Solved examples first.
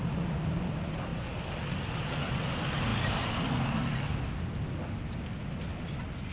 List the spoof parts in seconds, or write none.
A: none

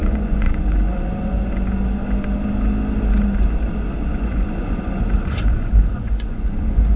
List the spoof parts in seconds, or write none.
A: 0.0-1.5 (vocoder, Vocos); 4.1-7.0